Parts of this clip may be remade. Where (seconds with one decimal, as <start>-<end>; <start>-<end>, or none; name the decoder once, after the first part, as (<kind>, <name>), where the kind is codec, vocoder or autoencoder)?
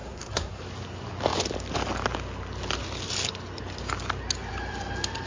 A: 0.0-0.6 (codec, SNAC)